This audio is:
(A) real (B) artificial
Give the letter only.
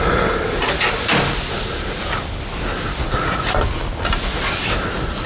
A